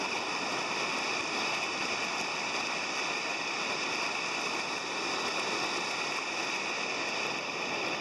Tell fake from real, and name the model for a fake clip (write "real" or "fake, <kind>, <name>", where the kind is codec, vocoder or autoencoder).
real